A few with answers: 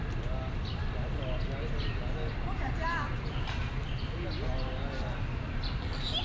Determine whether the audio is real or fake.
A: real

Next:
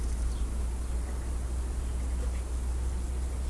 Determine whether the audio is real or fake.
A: real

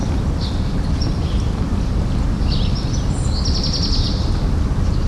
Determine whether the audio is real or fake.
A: real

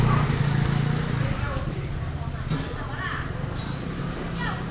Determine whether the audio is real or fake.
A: real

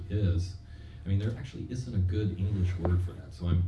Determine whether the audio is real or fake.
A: real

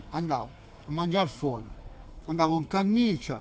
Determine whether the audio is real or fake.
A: fake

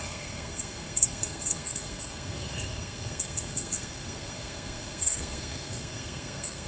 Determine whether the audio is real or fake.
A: fake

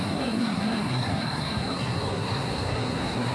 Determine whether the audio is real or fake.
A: fake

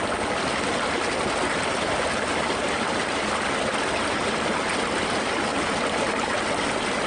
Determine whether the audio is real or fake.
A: real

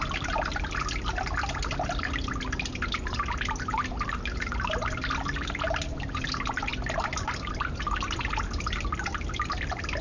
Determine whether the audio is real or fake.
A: real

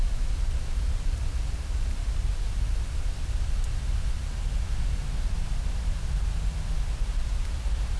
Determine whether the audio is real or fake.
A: real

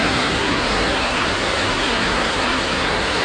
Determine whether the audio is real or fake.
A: fake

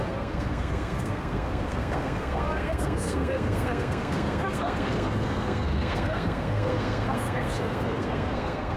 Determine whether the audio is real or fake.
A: fake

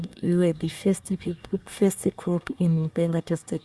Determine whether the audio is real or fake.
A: fake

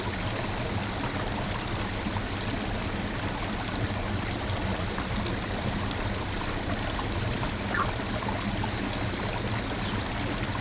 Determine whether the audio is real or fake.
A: real